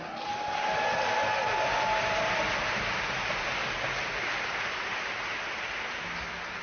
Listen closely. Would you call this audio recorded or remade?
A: recorded